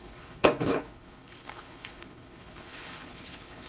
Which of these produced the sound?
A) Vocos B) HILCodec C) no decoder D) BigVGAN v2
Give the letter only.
B